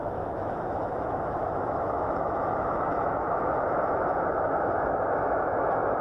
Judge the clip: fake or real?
fake